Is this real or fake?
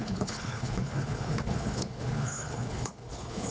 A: fake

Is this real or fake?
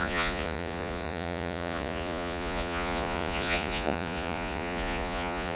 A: fake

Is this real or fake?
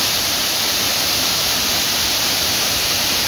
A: fake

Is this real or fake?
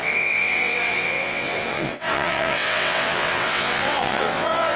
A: fake